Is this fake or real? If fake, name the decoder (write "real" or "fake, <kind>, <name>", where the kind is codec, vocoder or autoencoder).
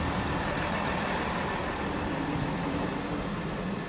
real